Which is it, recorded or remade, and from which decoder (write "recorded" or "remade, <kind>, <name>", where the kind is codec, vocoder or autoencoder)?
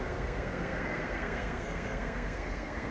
remade, codec, SNAC